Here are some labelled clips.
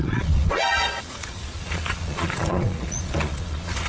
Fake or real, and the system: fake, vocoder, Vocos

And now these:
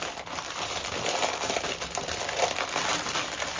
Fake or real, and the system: real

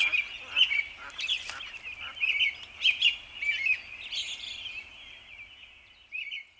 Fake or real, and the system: real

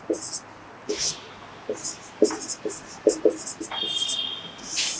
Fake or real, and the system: real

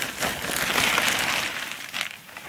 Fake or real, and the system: real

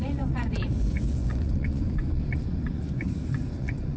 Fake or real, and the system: fake, vocoder, Vocos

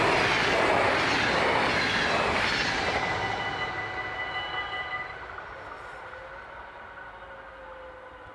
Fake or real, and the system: real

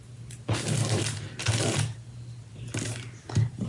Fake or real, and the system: real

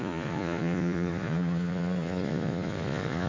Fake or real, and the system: fake, vocoder, Vocos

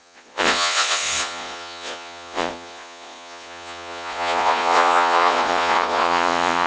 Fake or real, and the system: fake, vocoder, Vocos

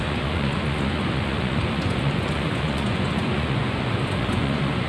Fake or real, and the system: fake, vocoder, Vocos